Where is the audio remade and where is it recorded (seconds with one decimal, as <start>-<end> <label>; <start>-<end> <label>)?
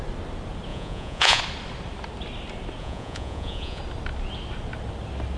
0.0-0.7 recorded; 0.7-1.4 remade; 1.4-2.8 recorded; 2.8-3.8 remade; 3.8-5.4 recorded